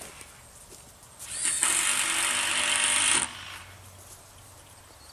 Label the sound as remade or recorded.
recorded